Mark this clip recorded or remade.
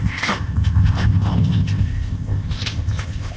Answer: remade